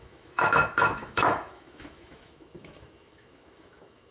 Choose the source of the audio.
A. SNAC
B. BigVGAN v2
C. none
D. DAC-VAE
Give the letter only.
D